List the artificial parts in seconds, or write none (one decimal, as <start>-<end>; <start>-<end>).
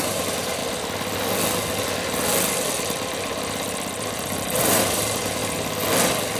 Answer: 0.0-0.6; 4.4-5.4